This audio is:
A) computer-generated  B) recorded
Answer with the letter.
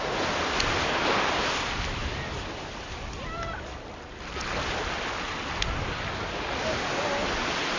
B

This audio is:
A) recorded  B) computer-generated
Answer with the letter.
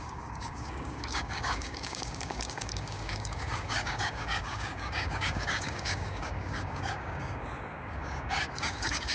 B